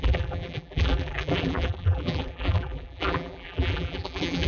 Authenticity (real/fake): fake